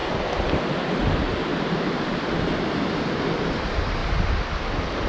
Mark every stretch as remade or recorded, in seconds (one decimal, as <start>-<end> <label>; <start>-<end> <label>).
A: 0.0-5.1 recorded